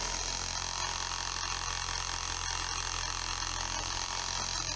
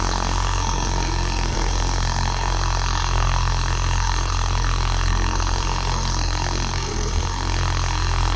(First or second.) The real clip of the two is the first